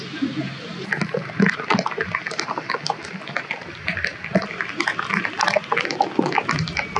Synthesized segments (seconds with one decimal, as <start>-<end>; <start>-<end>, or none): none